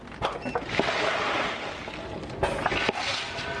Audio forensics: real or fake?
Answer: real